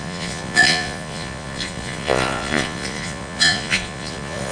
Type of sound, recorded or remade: remade